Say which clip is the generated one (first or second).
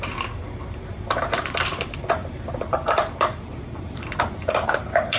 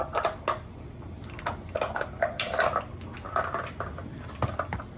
first